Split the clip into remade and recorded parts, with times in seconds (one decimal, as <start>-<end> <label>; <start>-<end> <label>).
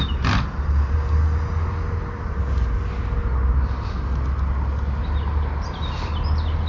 0.0-3.2 recorded; 3.2-3.9 remade; 3.9-6.7 recorded